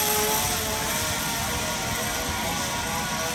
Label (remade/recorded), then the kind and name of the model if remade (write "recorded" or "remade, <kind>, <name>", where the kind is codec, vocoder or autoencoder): recorded